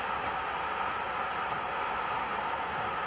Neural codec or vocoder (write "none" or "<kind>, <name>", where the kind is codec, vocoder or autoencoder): none